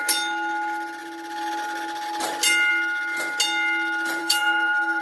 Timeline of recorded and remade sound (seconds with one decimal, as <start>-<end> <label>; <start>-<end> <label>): 0.0-4.2 recorded; 4.2-5.0 remade